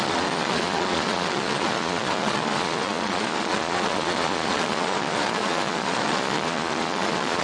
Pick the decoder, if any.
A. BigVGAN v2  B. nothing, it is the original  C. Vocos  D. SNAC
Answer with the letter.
C